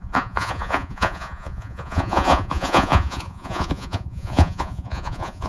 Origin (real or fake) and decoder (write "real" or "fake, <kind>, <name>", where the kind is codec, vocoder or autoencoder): fake, vocoder, Vocos